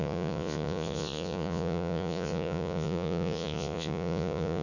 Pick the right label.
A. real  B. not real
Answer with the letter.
B